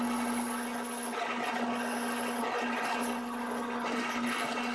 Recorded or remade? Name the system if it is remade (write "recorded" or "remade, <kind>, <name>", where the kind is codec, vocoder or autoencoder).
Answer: recorded